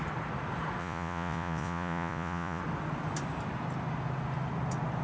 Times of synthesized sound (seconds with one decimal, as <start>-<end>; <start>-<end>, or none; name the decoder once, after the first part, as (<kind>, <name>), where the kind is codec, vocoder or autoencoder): 0.8-2.6 (vocoder, Vocos)